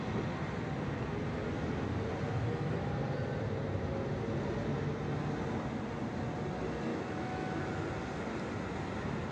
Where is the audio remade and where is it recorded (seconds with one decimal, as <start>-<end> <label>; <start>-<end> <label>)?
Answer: 0.0-6.9 recorded; 6.9-7.6 remade; 7.6-9.3 recorded